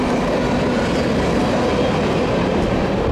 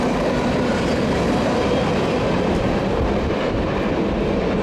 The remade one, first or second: second